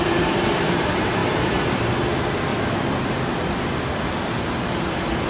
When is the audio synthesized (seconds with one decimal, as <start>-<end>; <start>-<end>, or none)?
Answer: 0.0-2.5; 4.6-5.3